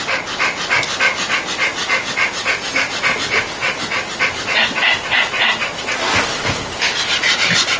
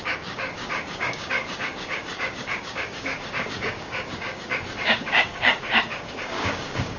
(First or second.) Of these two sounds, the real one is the first